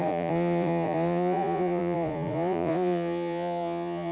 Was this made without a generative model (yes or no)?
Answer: no